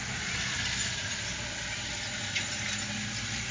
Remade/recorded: recorded